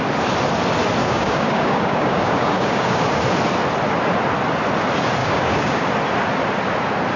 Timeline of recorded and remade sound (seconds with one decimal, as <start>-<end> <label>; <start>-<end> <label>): 0.0-1.0 recorded; 1.0-3.2 remade; 3.2-5.2 recorded; 5.2-5.9 remade; 5.9-7.2 recorded

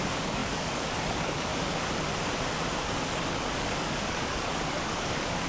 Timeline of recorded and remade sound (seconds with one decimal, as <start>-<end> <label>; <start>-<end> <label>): 0.0-1.5 remade; 1.5-3.1 recorded; 3.1-5.5 remade

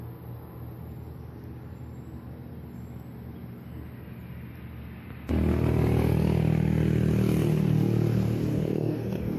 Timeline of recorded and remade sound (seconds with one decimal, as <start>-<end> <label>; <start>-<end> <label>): 0.0-8.5 recorded; 8.5-9.4 remade

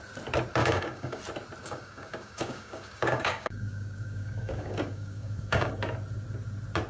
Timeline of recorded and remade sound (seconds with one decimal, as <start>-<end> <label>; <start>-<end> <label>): 0.0-0.6 recorded; 0.6-1.2 remade; 1.2-1.6 recorded; 1.6-5.7 remade; 5.7-6.9 recorded